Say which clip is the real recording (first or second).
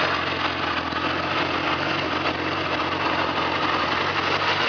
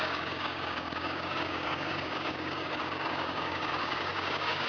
first